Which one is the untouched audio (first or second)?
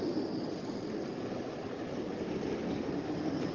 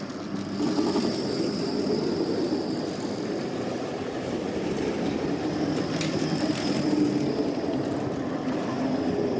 second